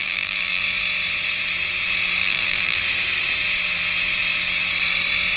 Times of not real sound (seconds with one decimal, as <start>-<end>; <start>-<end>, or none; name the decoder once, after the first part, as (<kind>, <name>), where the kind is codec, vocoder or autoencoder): 0.0-0.6 (vocoder, BigVGAN v2); 2.2-2.8